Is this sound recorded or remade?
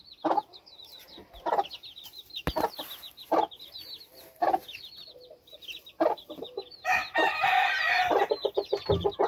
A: recorded